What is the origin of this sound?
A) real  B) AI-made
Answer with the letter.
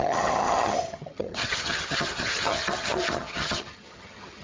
B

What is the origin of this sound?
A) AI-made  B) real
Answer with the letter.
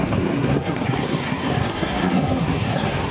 A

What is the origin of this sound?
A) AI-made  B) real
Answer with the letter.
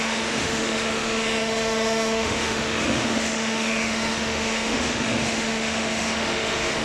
A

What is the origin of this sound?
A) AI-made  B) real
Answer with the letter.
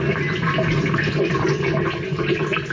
B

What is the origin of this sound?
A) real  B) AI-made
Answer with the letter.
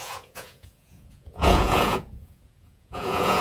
B